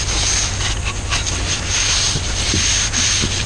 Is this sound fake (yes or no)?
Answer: no